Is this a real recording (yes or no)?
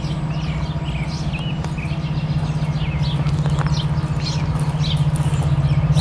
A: yes